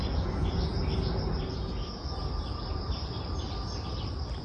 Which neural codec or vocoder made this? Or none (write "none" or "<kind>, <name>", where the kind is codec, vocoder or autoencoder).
none